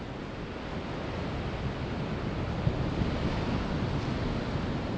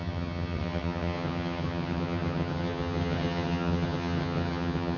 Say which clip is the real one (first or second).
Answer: first